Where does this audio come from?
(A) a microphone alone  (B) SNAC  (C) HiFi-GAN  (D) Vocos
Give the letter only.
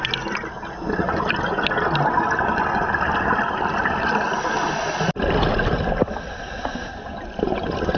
A